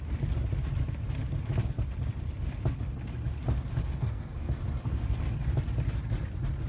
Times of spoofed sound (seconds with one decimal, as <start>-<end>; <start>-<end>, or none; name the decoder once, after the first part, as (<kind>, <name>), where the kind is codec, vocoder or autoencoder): 3.9-4.6 (codec, SNAC)